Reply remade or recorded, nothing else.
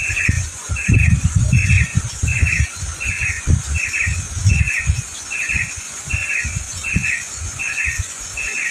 remade